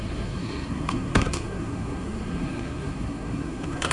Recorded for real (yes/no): no